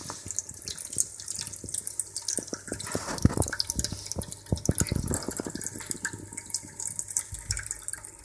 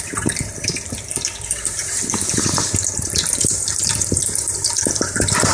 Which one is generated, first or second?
second